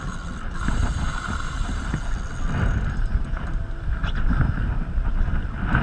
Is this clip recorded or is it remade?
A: recorded